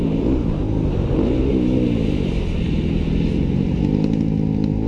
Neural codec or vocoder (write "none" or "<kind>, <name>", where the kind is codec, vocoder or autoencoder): none